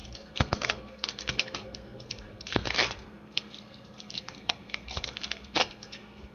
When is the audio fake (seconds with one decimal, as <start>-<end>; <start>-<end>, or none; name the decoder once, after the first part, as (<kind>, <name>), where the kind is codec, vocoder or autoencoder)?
0.0-6.3 (codec, SNAC)